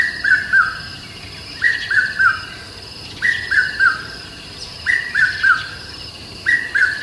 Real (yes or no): no